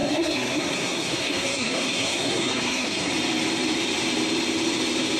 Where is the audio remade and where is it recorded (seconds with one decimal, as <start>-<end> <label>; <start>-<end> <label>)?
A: 0.0-3.1 remade; 3.1-5.2 recorded